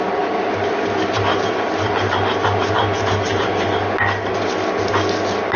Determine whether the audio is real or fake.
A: real